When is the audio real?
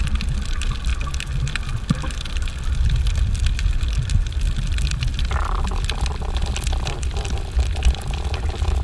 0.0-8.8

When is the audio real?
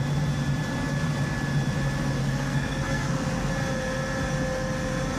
0.0-2.2; 3.5-5.2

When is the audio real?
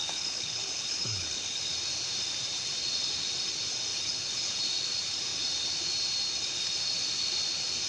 1.6-3.9; 4.6-7.9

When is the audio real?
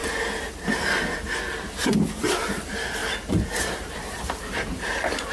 0.0-1.9; 3.0-3.6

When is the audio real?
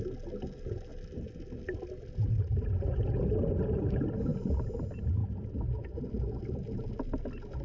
0.0-5.2; 6.0-7.6